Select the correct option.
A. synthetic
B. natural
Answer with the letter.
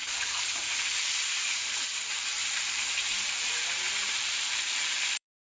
A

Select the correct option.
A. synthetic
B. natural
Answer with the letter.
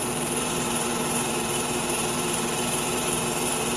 A